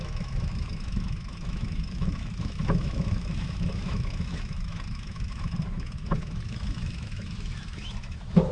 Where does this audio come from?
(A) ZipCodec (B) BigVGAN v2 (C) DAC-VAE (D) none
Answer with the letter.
C